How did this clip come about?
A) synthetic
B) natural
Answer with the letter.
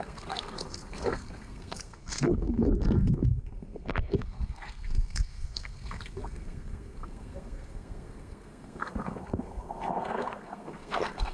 A